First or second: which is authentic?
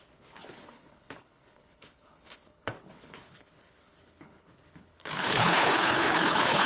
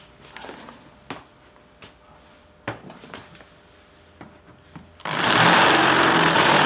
second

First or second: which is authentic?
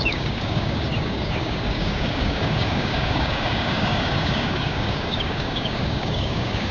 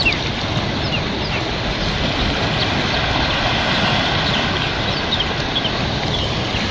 second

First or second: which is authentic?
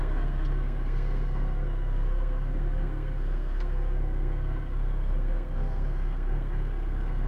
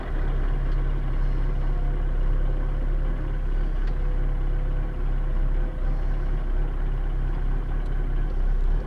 second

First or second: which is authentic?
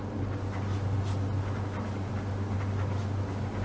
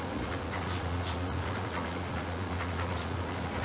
first